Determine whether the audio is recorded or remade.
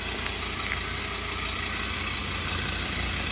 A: recorded